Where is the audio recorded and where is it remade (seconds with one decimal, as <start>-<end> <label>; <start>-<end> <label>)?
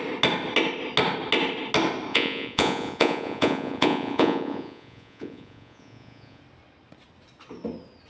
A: 0.0-2.1 recorded; 2.1-6.4 remade; 6.4-8.1 recorded